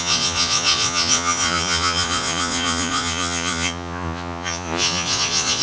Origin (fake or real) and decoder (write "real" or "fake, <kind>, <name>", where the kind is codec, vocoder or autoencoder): fake, vocoder, Vocos